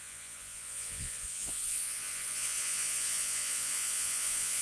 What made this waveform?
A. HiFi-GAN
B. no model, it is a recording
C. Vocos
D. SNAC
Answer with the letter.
C